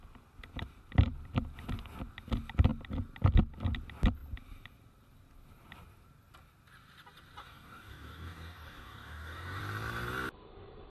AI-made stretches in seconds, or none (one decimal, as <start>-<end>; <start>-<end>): 7.4-9.6